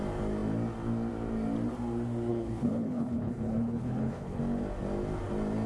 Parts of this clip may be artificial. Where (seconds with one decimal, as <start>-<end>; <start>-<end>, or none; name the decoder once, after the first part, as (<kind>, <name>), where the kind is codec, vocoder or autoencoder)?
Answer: 2.3-4.4 (codec, HILCodec)